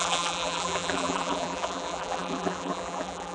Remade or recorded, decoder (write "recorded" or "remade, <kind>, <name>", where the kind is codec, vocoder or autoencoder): remade, vocoder, BigVGAN v2